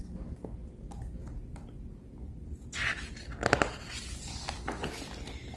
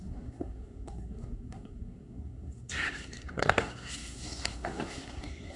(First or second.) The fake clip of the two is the second